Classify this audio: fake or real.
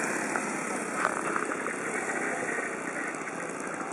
real